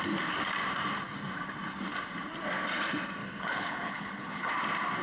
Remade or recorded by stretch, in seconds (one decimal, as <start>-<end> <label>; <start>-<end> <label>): 0.0-3.2 recorded; 3.2-4.5 remade; 4.5-5.0 recorded